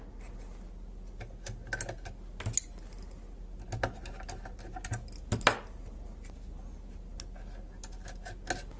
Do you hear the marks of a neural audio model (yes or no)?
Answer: no